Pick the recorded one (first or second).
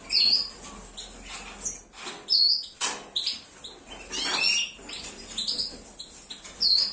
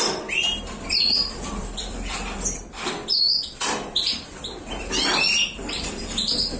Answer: first